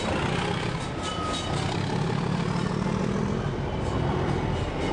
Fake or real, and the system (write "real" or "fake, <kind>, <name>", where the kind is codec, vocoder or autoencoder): real